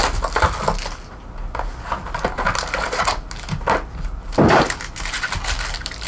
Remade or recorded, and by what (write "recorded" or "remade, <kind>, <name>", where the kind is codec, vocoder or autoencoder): recorded